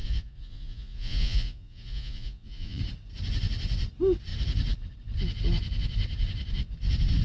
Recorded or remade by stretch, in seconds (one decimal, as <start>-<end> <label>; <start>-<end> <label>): 0.0-2.8 remade; 2.8-7.2 recorded

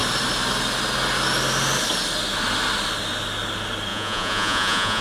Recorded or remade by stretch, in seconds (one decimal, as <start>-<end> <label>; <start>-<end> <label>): 0.0-3.9 recorded; 3.9-5.0 remade

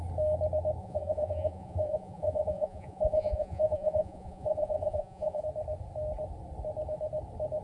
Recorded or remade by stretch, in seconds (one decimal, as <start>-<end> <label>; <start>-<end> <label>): 0.0-0.8 recorded; 0.8-5.4 remade; 5.4-7.6 recorded

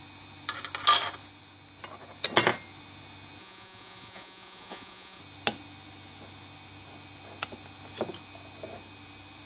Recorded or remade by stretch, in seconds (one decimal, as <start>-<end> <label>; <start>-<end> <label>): 0.0-3.4 recorded; 3.4-5.2 remade; 5.2-9.5 recorded

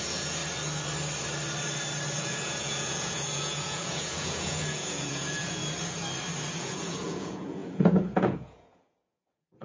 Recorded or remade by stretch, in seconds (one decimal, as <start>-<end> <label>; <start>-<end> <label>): 0.0-0.4 remade; 0.4-2.2 recorded; 2.2-5.6 remade; 5.6-6.5 recorded; 6.5-9.6 remade